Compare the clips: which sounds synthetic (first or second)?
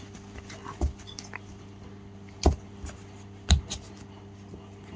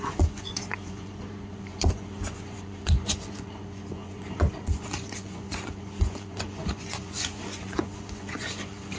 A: second